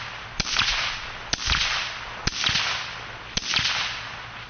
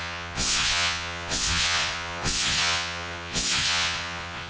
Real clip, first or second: first